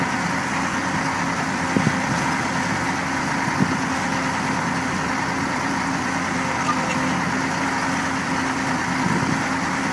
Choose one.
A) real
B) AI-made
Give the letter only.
A